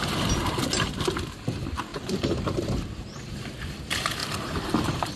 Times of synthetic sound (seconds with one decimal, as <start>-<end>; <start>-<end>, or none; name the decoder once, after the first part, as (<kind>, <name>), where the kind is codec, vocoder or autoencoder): 1.9-3.6 (vocoder, BigVGAN v2); 4.2-5.2